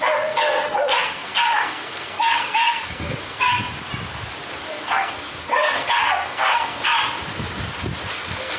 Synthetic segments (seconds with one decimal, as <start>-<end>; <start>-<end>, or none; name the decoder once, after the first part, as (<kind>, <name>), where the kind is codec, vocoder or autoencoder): 0.0-3.5 (codec, SNAC); 4.7-6.9; 8.1-8.6

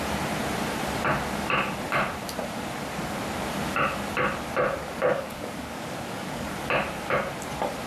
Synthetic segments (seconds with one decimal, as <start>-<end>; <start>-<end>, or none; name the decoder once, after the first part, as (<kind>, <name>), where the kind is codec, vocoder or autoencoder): 4.8-6.5 (codec, DAC)

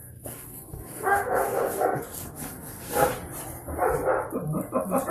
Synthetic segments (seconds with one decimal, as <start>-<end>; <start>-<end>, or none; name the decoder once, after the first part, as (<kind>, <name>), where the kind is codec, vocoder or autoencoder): 0.0-3.1 (codec, SNAC)

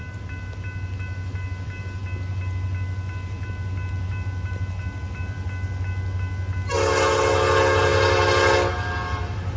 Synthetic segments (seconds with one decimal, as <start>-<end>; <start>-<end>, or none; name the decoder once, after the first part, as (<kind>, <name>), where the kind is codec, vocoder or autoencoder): none

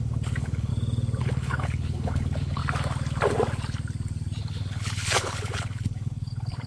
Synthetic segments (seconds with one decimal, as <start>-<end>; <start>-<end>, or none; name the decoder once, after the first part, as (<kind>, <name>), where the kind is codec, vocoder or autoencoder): 0.0-0.7 (codec, HILCodec); 1.2-2.6; 4.4-6.7

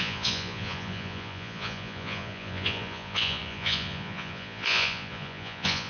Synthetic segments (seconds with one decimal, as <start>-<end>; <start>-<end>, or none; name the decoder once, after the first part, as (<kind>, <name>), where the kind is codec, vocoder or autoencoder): 0.0-5.9 (vocoder, Vocos)